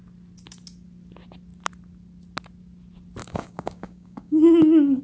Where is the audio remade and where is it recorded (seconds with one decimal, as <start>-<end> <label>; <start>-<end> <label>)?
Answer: 0.0-3.2 recorded; 3.2-5.0 remade